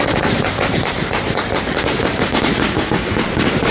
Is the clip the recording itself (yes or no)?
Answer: no